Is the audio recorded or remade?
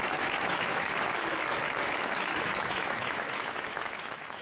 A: remade